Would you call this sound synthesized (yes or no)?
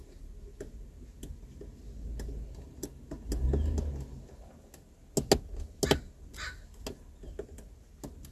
no